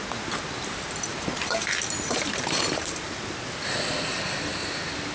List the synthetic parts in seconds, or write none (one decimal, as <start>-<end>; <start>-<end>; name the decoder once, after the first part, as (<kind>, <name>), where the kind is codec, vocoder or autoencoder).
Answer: 1.1-3.2 (vocoder, BigVGAN v2)

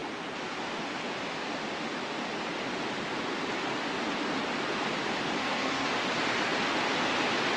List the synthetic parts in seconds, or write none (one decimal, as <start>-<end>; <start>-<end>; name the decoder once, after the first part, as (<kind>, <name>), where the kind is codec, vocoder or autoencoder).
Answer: 5.4-5.9 (codec, SNAC)

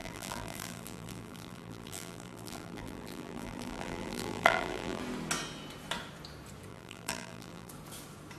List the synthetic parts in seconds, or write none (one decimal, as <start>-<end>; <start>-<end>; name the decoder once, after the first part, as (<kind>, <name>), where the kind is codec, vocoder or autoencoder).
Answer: 0.0-5.0 (vocoder, BigVGAN v2); 6.7-7.7

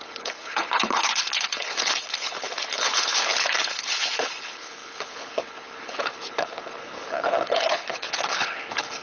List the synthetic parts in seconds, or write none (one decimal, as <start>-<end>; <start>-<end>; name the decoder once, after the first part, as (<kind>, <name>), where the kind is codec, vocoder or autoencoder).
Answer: 0.0-9.0 (codec, HILCodec)

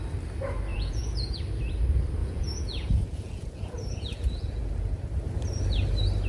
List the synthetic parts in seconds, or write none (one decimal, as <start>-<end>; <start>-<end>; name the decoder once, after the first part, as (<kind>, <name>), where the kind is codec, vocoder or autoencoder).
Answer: 0.7-1.4 (vocoder, Vocos); 2.2-4.6